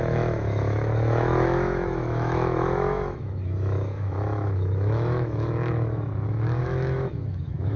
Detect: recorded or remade remade